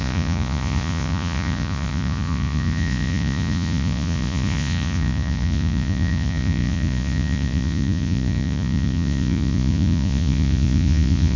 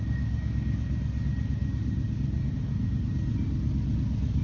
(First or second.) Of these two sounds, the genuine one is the second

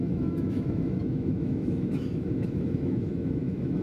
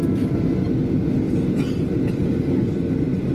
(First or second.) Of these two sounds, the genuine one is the second